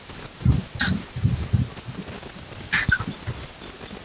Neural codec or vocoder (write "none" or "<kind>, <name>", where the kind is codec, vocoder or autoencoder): none